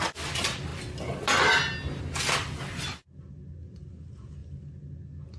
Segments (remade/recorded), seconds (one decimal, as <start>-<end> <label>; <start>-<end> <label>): 0.0-5.4 recorded